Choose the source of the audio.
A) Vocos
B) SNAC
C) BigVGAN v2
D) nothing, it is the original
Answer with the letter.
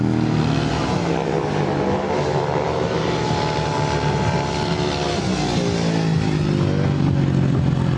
D